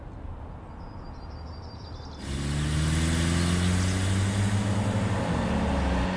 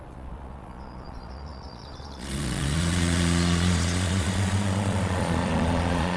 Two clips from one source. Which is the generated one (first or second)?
second